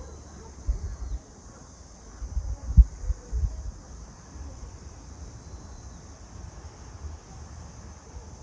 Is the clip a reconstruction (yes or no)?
no